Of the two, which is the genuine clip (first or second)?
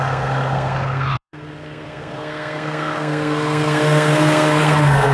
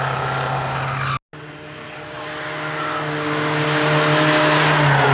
second